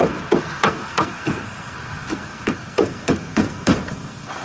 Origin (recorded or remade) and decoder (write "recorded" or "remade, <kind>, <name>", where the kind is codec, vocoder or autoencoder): remade, codec, SNAC